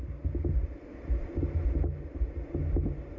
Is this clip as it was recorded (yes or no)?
yes